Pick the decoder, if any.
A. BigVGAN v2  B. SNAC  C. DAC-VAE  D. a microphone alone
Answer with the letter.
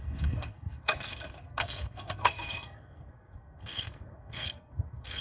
B